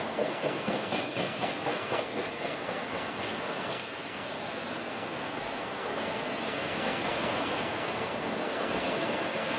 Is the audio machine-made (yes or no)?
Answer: yes